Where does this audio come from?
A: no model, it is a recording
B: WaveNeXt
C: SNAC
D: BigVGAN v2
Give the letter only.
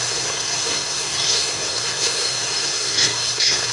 C